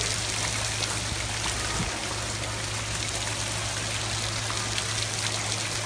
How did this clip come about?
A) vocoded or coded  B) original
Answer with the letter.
B